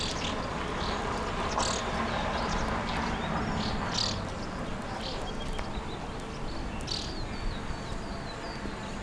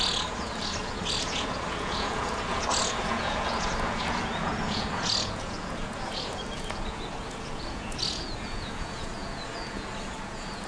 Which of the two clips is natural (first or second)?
first